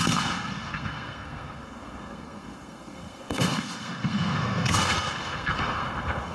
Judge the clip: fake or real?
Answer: fake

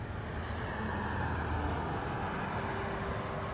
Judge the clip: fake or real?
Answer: real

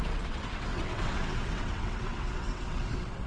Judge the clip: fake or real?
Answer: fake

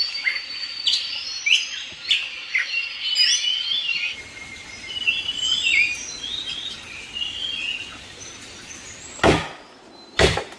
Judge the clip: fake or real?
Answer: real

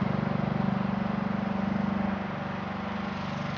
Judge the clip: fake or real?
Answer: real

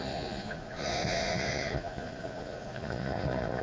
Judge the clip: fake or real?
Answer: fake